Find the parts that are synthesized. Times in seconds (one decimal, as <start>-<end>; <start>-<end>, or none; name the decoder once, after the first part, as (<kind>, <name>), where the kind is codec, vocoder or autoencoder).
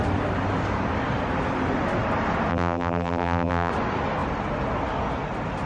2.5-3.7 (vocoder, BigVGAN v2)